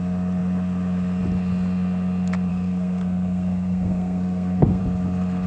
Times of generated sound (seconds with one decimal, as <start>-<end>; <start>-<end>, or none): 2.5-4.8